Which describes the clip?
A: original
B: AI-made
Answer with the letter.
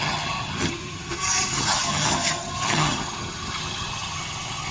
B